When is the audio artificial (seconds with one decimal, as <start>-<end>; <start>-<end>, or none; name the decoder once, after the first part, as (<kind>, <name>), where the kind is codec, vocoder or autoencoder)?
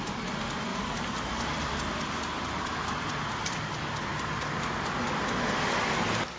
0.7-1.7 (vocoder, BigVGAN v2)